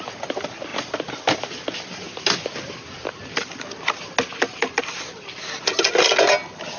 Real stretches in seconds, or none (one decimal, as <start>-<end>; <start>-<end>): 0.0-6.8